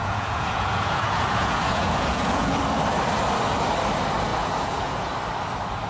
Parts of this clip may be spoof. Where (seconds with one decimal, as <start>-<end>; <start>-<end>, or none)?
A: 0.0-2.6; 4.3-5.1